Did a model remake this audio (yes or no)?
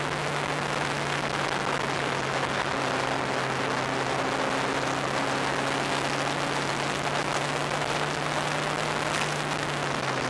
no